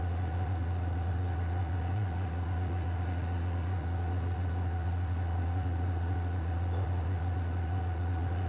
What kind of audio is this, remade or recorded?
remade